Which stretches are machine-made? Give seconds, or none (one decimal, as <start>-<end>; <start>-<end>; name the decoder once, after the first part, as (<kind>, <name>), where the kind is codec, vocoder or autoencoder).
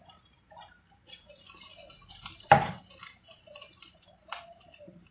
0.0-1.7 (vocoder, BigVGAN v2); 2.3-5.1